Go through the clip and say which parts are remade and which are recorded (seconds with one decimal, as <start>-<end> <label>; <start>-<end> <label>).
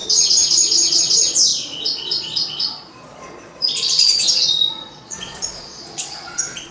0.0-6.7 remade